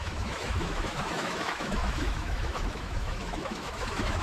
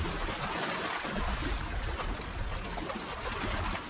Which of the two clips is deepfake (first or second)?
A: first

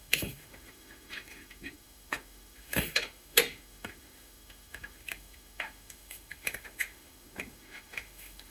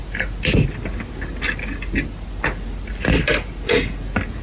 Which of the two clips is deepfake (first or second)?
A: first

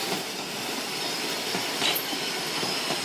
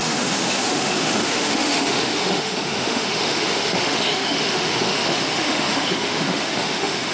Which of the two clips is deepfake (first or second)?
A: second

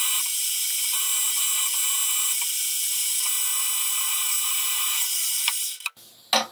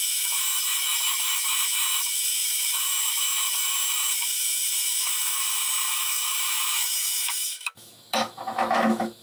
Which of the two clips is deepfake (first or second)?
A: second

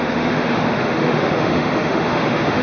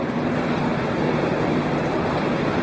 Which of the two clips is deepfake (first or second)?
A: first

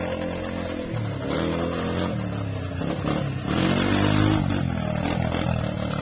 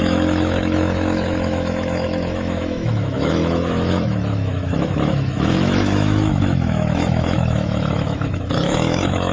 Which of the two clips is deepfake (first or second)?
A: second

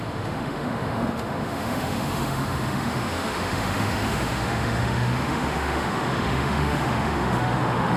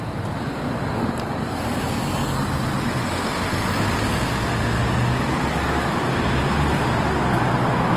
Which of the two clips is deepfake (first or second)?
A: first